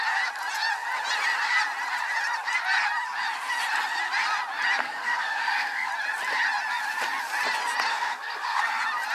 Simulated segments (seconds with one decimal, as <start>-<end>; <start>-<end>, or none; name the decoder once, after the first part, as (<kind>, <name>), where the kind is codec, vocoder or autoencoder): 4.8-5.9 (codec, SNAC); 7.9-8.7